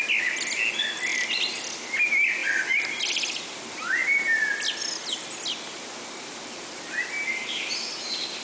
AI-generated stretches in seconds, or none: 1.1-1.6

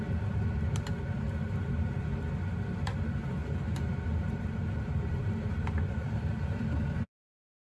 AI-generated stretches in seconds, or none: 3.4-6.8

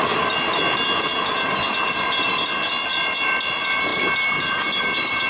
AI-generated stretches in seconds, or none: none